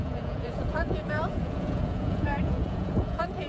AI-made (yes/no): yes